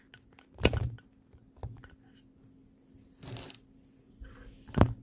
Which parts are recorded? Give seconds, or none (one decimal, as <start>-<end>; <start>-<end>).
0.0-5.0